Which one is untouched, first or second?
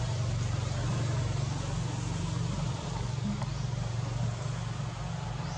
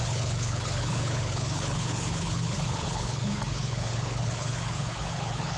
first